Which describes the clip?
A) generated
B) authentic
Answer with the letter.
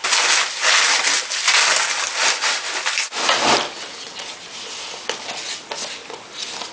B